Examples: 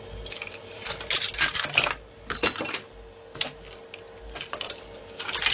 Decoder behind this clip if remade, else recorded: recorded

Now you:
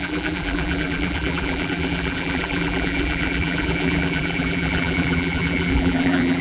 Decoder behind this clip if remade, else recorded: remade, vocoder, BigVGAN v2